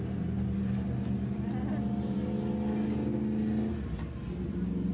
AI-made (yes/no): no